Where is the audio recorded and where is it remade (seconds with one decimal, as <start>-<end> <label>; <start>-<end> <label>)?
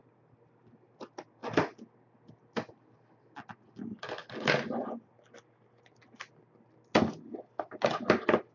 0.0-8.5 recorded